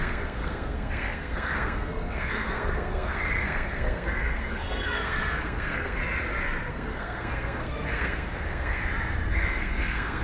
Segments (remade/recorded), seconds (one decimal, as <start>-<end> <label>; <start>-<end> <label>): 0.0-6.0 remade; 6.0-6.7 recorded; 6.7-8.8 remade; 8.8-9.3 recorded; 9.3-10.2 remade